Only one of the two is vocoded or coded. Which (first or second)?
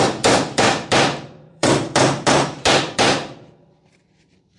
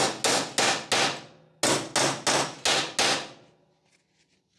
first